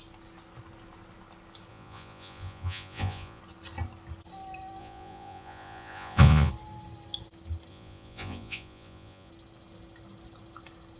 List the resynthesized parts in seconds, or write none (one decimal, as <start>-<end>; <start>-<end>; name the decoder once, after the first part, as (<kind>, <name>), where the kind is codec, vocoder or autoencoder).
1.7-3.4 (vocoder, Vocos); 4.8-6.5; 7.7-9.3